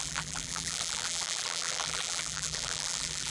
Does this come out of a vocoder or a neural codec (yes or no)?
yes